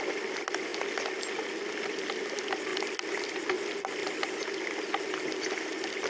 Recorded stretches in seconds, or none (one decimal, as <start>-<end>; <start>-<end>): 0.0-6.1